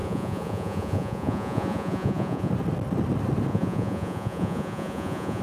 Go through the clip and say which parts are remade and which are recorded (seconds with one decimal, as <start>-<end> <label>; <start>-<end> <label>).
0.0-2.5 remade; 2.5-3.5 recorded; 3.5-5.4 remade